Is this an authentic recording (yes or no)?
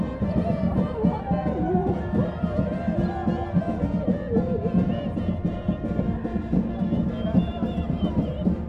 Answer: yes